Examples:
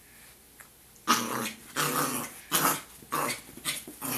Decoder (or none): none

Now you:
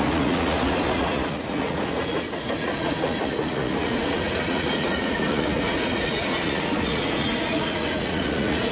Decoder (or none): vocoder, Vocos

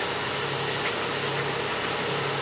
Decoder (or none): none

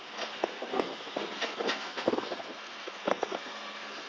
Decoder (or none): codec, SNAC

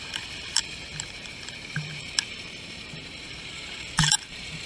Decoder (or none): vocoder, BigVGAN v2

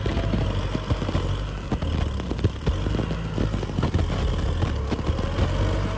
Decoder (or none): none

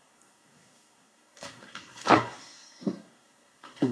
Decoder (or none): codec, SNAC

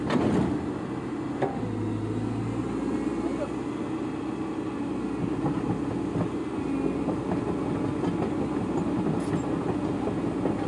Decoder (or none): none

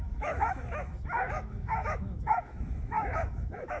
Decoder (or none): autoencoder, DAC-VAE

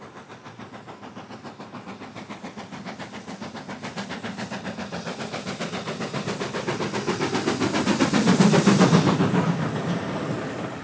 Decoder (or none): none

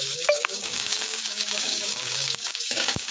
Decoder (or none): codec, DAC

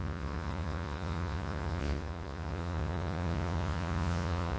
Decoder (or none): vocoder, Vocos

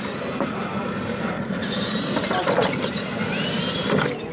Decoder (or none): none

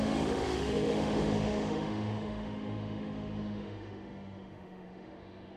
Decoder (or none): autoencoder, DAC-VAE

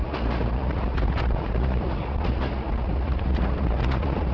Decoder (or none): vocoder, Vocos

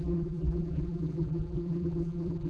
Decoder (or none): vocoder, BigVGAN v2